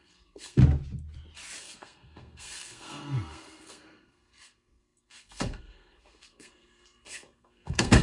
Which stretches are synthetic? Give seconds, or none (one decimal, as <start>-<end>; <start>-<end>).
0.0-0.6; 1.6-8.0